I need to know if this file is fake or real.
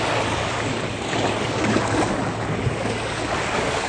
fake